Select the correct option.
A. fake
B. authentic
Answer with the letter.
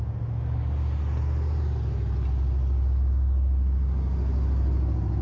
B